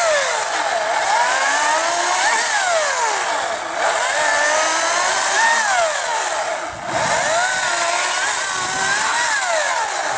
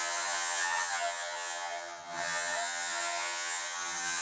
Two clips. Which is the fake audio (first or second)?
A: second